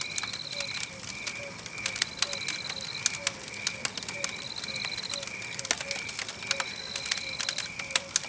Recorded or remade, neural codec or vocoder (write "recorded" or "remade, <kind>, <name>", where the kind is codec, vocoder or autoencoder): recorded